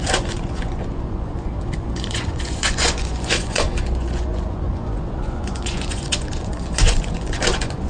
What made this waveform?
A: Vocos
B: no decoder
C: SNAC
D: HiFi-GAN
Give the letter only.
A